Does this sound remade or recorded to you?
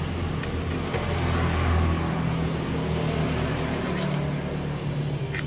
recorded